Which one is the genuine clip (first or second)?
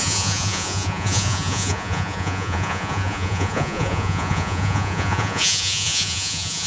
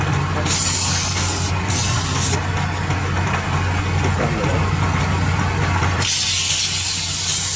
second